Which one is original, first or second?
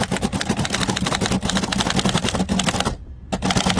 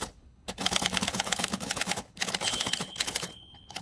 first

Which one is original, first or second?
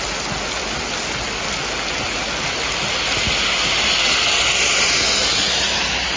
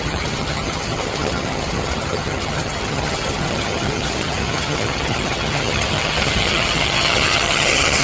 first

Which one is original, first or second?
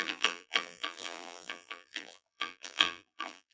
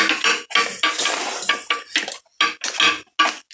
second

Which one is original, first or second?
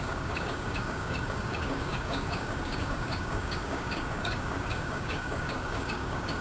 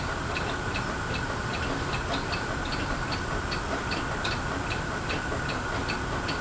second